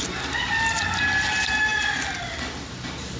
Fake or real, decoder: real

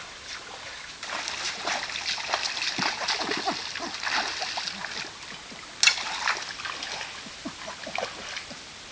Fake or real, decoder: real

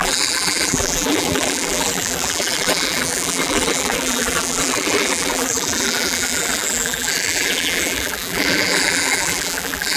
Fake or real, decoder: fake, vocoder, BigVGAN v2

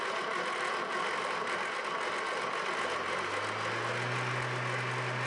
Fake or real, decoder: real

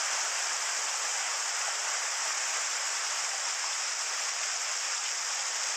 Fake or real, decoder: real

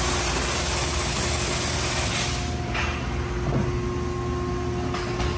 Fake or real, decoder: real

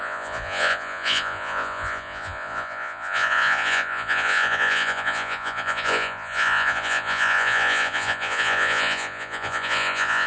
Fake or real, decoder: fake, vocoder, Vocos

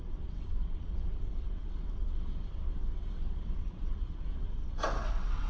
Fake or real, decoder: fake, vocoder, WaveNeXt